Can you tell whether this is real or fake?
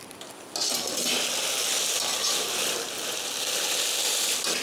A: real